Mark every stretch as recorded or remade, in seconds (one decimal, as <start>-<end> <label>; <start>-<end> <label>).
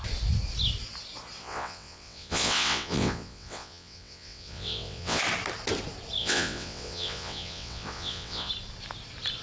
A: 0.0-1.4 recorded; 1.4-5.2 remade; 5.2-6.2 recorded; 6.2-8.5 remade; 8.5-9.4 recorded